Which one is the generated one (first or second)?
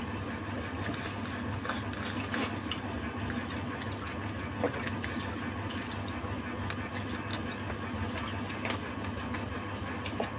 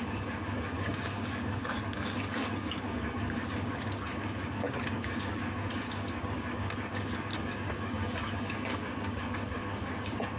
second